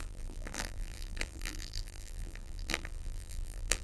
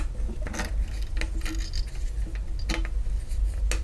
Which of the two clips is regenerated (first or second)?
first